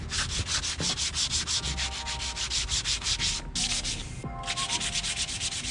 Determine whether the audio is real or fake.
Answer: real